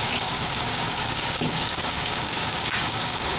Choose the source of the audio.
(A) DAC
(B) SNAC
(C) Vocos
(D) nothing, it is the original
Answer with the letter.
A